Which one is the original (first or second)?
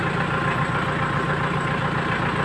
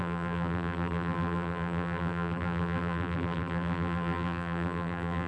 first